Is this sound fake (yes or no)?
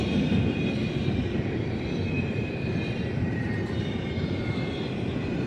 yes